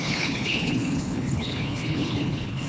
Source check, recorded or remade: remade